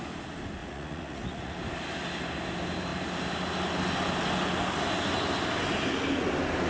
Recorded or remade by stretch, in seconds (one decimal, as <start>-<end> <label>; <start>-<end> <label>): 0.0-0.6 recorded; 0.6-1.6 remade; 1.6-6.7 recorded